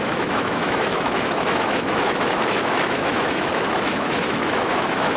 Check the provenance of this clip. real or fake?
fake